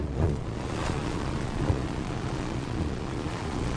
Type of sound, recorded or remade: remade